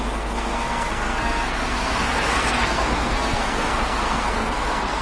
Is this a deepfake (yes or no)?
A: yes